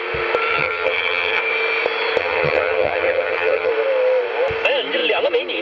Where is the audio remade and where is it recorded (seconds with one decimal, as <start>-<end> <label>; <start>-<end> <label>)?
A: 0.0-0.5 recorded; 0.5-1.4 remade; 1.4-2.2 recorded; 2.2-3.7 remade; 3.7-5.6 recorded